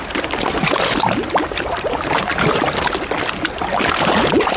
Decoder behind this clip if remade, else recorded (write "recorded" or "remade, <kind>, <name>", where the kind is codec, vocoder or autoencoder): recorded